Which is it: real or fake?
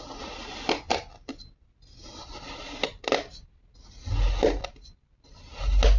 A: real